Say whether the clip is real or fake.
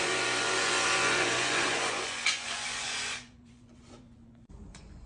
fake